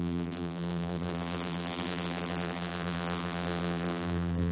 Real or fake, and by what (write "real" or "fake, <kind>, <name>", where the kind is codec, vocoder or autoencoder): fake, vocoder, BigVGAN v2